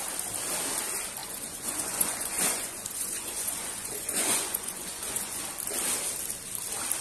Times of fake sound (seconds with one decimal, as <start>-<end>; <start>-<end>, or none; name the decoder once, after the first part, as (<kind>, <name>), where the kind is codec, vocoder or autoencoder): 1.2-5.4 (vocoder, Vocos)